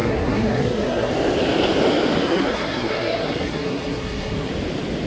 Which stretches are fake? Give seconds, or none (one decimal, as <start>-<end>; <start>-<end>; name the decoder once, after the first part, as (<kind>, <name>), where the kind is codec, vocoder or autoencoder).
0.0-1.1 (codec, SNAC); 2.2-4.5